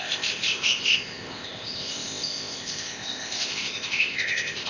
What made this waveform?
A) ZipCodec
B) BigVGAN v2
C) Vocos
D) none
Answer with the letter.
A